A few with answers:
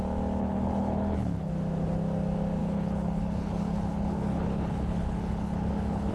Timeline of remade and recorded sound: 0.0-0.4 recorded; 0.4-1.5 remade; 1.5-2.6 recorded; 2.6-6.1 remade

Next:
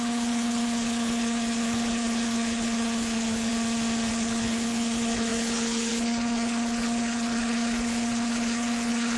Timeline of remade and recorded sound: 0.0-3.5 remade; 3.5-4.1 recorded; 4.1-9.2 remade

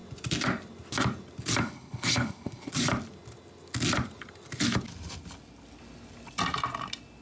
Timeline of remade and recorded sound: 0.0-1.6 recorded; 1.6-2.7 remade; 2.7-7.2 recorded

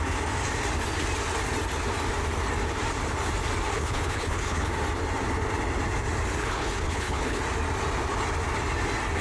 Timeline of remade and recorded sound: 0.0-3.7 recorded; 3.7-4.7 remade; 4.7-6.4 recorded; 6.4-7.4 remade; 7.4-9.2 recorded

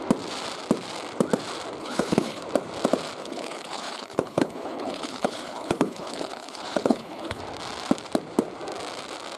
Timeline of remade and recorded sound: 0.0-1.8 recorded; 1.8-2.4 remade; 2.4-3.2 recorded; 3.2-7.4 remade; 7.4-9.4 recorded

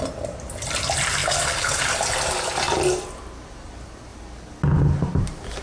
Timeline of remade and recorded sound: 0.0-1.2 recorded; 1.2-1.8 remade; 1.8-5.6 recorded

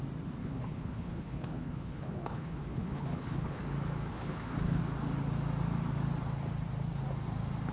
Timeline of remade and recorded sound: 0.0-0.4 recorded; 0.4-3.6 remade; 3.6-4.1 recorded; 4.1-4.8 remade; 4.8-7.7 recorded

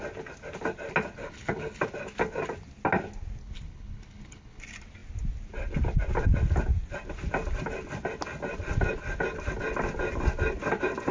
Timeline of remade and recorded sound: 0.0-1.2 recorded; 1.2-1.8 remade; 1.8-3.4 recorded; 3.4-4.6 remade; 4.6-11.1 recorded